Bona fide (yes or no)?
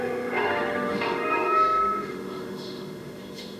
no